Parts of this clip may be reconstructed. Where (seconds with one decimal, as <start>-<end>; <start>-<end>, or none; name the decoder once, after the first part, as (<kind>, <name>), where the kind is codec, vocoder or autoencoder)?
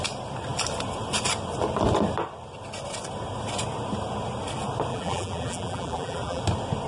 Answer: 4.9-6.4 (vocoder, BigVGAN v2)